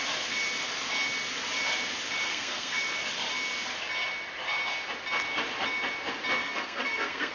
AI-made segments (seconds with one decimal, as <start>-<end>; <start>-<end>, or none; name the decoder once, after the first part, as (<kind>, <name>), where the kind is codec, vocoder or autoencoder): 2.2-2.8 (codec, SNAC); 6.4-7.3